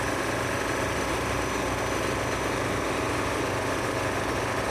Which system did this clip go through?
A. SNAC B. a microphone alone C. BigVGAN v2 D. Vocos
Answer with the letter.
B